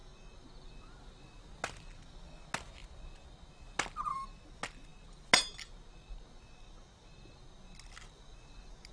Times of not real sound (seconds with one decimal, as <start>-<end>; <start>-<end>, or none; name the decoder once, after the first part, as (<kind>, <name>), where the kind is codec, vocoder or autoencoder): none